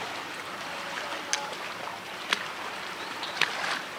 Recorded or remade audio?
recorded